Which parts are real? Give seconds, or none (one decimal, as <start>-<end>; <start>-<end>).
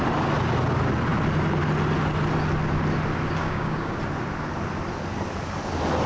0.0-3.4; 4.0-6.1